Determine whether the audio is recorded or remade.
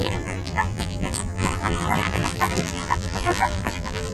remade